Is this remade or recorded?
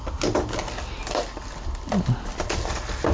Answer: recorded